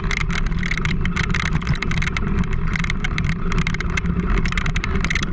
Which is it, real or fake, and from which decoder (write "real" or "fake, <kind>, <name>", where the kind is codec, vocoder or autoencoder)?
real